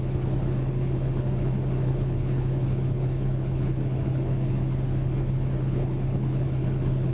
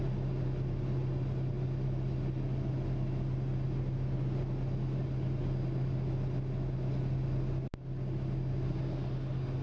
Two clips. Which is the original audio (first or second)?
second